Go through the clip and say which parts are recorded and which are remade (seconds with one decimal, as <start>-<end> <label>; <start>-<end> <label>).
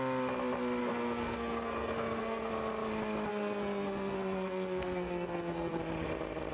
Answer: 0.0-0.8 recorded; 0.8-2.5 remade; 2.5-3.3 recorded; 3.3-5.8 remade; 5.8-6.5 recorded